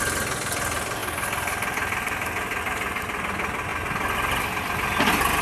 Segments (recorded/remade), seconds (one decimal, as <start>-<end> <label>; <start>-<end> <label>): 0.0-5.4 recorded